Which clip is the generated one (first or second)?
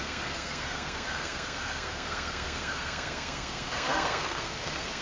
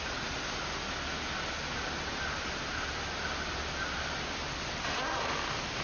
first